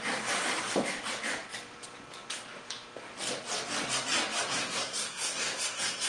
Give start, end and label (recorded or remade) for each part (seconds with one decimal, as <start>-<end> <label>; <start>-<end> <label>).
0.0-4.5 recorded; 4.5-6.1 remade